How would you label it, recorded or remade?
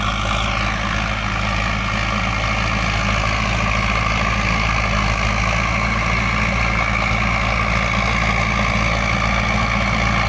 recorded